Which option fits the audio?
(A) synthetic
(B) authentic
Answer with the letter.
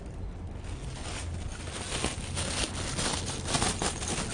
B